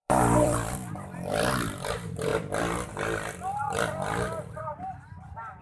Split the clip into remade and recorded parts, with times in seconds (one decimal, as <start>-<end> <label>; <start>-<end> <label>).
0.0-5.6 remade